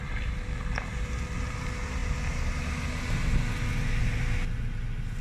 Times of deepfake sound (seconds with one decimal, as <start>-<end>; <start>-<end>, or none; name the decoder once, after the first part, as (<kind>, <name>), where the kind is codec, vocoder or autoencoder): none